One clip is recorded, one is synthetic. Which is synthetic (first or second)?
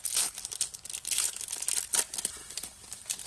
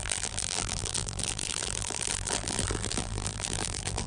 second